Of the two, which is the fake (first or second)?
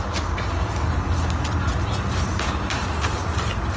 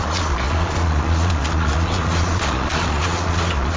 second